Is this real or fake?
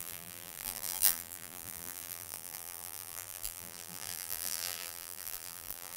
fake